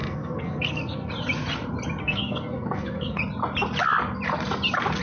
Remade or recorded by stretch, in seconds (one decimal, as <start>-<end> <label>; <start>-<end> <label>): 0.0-1.1 remade; 1.1-2.0 recorded; 2.0-3.2 remade; 3.2-5.0 recorded